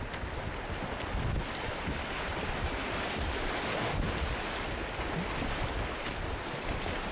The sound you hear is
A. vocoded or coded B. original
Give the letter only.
B